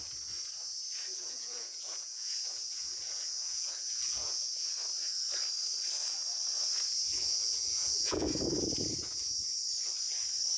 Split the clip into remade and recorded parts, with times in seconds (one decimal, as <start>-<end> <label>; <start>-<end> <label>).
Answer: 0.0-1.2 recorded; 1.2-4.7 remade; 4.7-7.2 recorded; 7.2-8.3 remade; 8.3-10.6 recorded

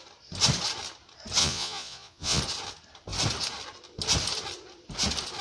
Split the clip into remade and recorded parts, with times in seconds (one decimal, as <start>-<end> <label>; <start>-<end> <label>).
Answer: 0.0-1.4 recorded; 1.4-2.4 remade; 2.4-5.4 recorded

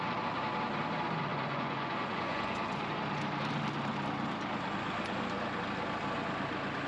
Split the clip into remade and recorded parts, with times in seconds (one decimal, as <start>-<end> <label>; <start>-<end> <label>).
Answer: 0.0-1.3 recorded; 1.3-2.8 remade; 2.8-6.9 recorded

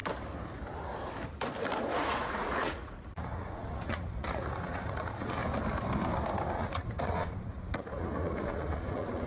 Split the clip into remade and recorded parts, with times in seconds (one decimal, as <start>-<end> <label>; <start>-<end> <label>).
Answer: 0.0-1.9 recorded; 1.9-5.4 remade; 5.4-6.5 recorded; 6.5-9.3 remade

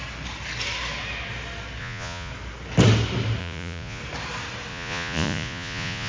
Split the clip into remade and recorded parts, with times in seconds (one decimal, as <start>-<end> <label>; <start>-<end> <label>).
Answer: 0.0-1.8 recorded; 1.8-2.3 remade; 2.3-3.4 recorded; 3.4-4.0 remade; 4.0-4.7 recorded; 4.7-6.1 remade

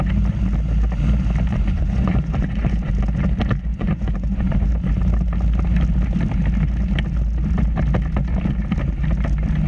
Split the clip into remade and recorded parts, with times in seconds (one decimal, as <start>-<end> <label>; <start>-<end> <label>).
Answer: 0.0-1.5 recorded; 1.5-2.9 remade; 2.9-3.7 recorded; 3.7-4.7 remade; 4.7-9.7 recorded

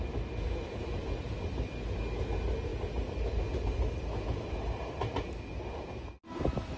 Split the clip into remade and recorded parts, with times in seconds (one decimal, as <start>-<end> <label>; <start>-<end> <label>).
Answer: 0.0-6.8 recorded

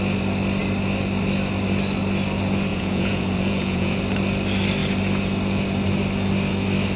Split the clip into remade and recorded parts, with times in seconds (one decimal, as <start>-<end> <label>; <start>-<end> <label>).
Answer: 0.0-2.7 recorded; 2.7-4.0 remade; 4.0-7.0 recorded